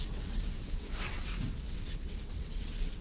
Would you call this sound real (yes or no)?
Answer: no